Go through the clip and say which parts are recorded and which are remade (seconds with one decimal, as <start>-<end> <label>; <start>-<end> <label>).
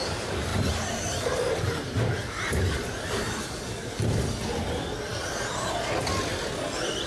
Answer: 0.0-0.5 recorded; 0.5-3.5 remade; 3.5-7.1 recorded